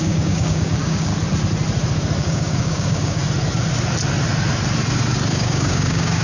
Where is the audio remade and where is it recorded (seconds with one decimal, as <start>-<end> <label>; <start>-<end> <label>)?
0.0-1.1 remade; 1.1-2.2 recorded; 2.2-3.2 remade; 3.2-5.3 recorded; 5.3-6.2 remade